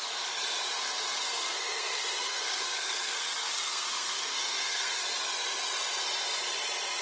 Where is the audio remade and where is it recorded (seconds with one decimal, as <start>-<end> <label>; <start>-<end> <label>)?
0.0-0.8 recorded; 0.8-5.0 remade; 5.0-7.0 recorded